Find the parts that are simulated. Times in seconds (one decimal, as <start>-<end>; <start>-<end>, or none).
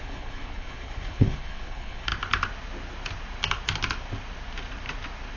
0.0-2.1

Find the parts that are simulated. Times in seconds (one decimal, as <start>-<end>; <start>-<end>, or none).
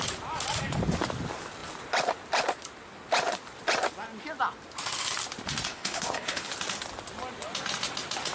5.7-6.5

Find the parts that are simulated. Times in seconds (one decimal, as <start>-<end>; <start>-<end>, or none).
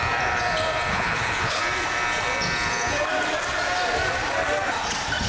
0.9-1.6